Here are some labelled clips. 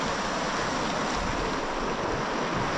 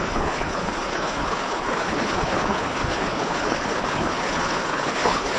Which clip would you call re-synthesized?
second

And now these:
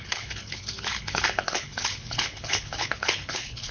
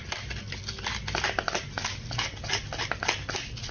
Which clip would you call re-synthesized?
first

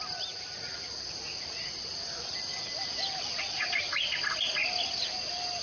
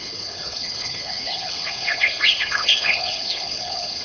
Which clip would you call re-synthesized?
second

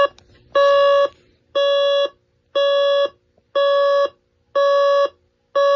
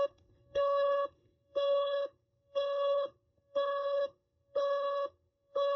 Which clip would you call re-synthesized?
second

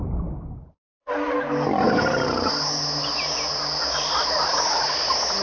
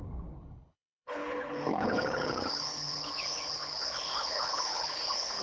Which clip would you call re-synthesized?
second